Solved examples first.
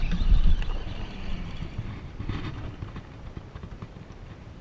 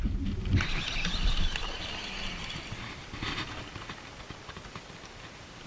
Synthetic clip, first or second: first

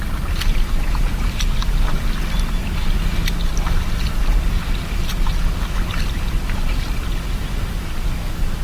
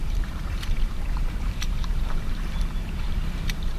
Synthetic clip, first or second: second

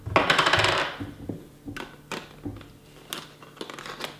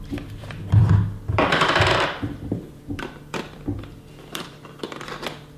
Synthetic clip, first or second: second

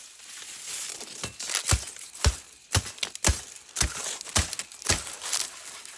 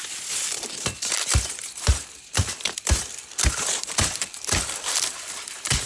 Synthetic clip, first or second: second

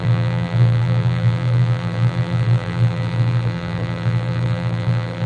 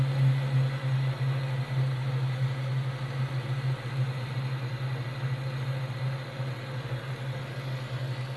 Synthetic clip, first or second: first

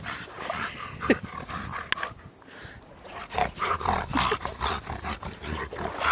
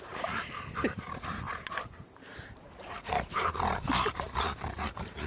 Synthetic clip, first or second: second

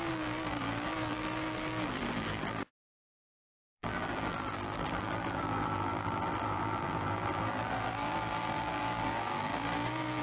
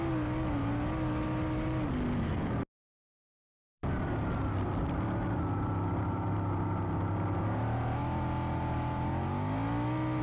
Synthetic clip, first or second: first